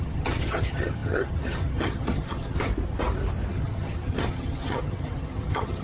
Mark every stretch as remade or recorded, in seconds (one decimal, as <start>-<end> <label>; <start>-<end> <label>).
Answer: 0.0-2.7 remade; 2.7-3.5 recorded; 3.5-5.8 remade